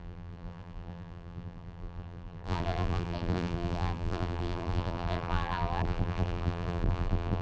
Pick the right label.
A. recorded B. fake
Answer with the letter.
B